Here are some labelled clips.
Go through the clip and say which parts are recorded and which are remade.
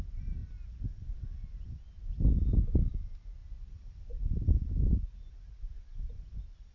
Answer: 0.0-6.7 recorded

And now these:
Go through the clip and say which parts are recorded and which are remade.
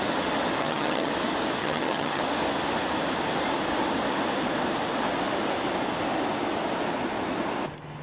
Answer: 0.0-0.6 recorded; 0.6-1.1 remade; 1.1-1.6 recorded; 1.6-2.2 remade; 2.2-8.0 recorded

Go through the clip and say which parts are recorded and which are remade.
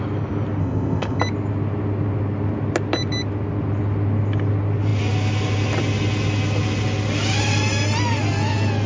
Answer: 0.0-0.6 recorded; 0.6-1.2 remade; 1.2-8.9 recorded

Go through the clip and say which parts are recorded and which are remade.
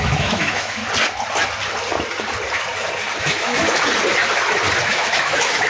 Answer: 0.0-0.8 remade; 0.8-3.2 recorded; 3.2-3.6 remade; 3.6-4.9 recorded; 4.9-5.7 remade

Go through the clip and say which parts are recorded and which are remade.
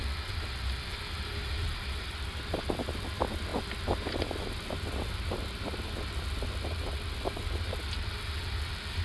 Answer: 0.0-9.0 recorded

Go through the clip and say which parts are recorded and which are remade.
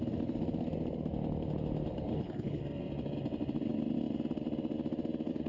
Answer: 0.0-2.1 recorded; 2.1-2.6 remade; 2.6-5.5 recorded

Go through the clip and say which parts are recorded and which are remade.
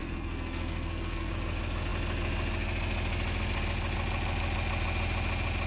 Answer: 0.0-1.3 remade; 1.3-5.7 recorded